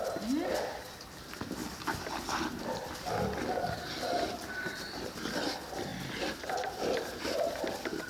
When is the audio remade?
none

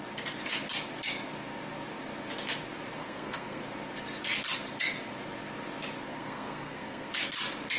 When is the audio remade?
3.0-3.6 (codec, SNAC); 6.1-7.1

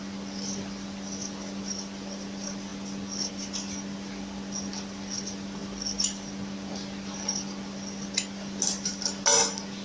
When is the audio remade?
none

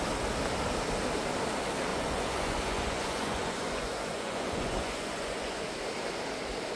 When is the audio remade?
1.9-5.7 (vocoder, Vocos)

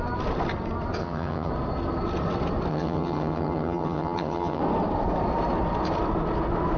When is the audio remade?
1.0-1.5 (vocoder, HiFi-GAN); 2.7-4.6

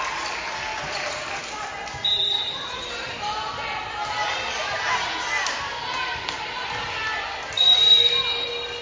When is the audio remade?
none

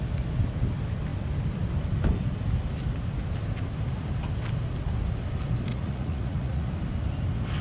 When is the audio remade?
5.7-6.7 (vocoder, Vocos)

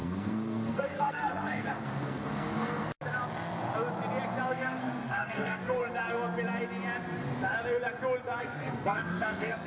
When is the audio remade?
0.0-2.9 (codec, SNAC); 4.5-5.8; 8.4-9.7